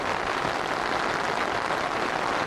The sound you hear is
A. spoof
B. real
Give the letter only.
B